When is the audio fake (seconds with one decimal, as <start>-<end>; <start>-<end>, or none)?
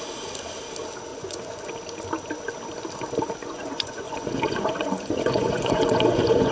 1.1-1.7; 3.4-6.5